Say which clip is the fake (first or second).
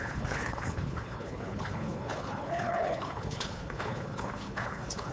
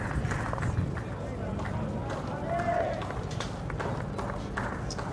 first